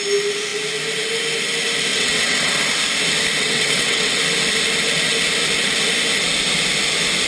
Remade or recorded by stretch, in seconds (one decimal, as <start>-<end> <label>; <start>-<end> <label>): 0.0-1.9 recorded; 1.9-2.5 remade; 2.5-3.4 recorded; 3.4-4.2 remade; 4.2-7.3 recorded